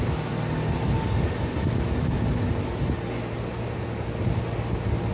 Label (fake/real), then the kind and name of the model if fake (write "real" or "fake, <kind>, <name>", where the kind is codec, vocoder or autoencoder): real